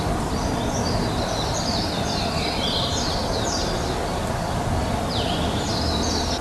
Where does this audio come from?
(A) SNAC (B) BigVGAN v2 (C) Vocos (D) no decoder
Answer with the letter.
D